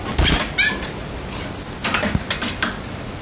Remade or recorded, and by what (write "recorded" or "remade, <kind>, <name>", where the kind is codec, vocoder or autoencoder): recorded